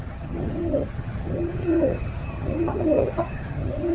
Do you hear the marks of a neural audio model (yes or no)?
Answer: yes